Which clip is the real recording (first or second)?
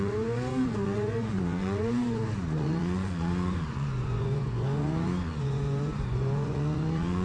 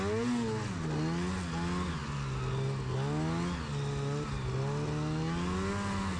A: second